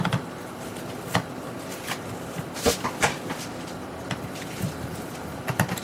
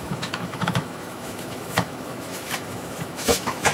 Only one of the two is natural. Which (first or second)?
first